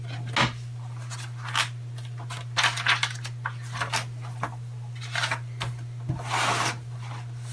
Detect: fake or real real